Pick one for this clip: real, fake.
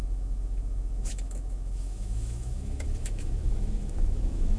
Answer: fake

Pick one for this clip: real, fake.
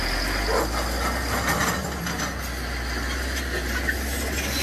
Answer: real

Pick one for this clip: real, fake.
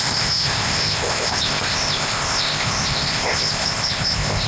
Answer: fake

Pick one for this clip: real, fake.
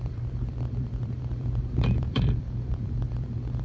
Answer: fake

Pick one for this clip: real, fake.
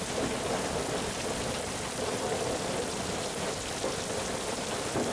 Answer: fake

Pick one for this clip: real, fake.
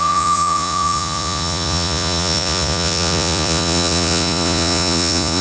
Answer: fake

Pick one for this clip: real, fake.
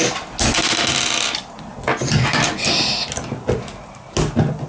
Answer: real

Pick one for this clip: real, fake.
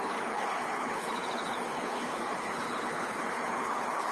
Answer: fake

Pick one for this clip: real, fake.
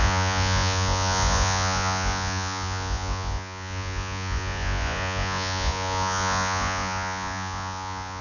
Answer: fake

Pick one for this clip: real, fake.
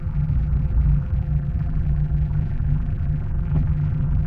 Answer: fake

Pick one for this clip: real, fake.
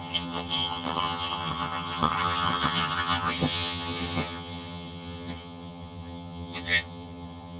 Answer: fake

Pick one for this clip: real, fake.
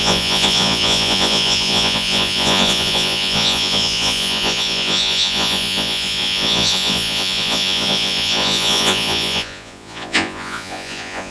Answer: fake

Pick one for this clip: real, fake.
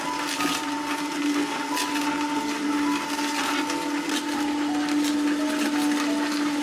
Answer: real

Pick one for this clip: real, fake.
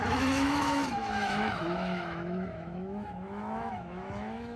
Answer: fake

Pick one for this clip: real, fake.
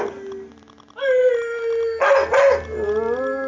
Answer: real